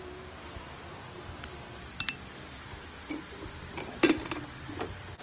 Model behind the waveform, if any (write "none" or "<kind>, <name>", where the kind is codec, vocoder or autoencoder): none